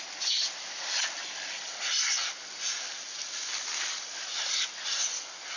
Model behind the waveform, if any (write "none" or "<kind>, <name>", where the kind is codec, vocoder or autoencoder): none